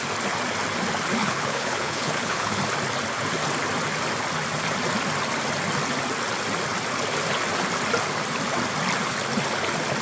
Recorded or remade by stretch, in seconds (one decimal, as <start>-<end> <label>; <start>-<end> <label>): 0.0-1.2 recorded; 1.2-2.6 remade; 2.6-10.0 recorded